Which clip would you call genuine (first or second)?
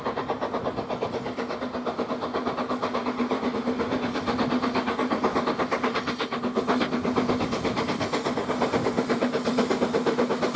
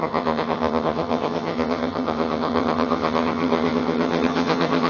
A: first